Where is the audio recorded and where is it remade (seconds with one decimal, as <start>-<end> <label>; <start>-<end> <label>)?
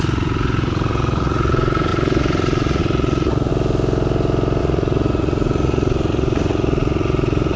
0.0-3.5 remade; 3.5-4.6 recorded; 4.6-7.6 remade